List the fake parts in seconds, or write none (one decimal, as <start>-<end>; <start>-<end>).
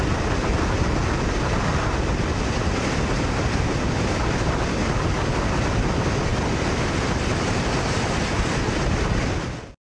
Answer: none